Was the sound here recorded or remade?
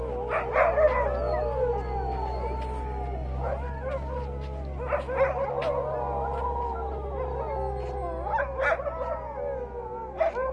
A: recorded